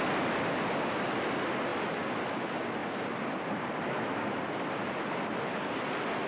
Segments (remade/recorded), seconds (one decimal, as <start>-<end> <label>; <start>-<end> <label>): 0.0-6.3 recorded